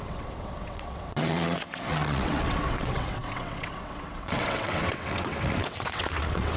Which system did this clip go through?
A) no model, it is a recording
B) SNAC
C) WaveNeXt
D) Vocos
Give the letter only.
C